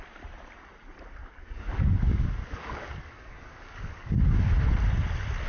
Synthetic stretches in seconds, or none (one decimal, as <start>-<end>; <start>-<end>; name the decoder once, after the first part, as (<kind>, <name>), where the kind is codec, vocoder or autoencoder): 1.2-4.5 (codec, DAC)